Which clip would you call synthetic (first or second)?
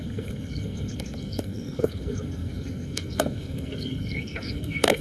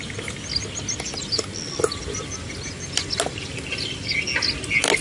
first